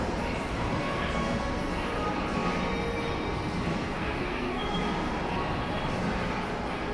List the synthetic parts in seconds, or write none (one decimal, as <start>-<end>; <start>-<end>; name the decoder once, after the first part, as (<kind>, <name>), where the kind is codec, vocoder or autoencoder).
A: 0.8-1.7 (codec, SNAC); 3.7-4.6